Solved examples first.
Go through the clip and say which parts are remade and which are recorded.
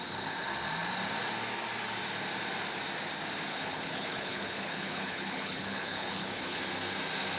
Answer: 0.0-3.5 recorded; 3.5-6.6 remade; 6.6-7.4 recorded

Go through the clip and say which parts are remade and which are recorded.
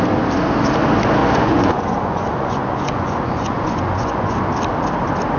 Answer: 0.0-1.2 recorded; 1.2-4.4 remade; 4.4-5.4 recorded